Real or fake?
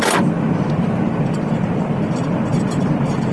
real